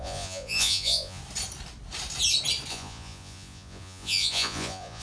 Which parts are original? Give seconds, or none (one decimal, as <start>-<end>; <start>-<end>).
1.2-2.7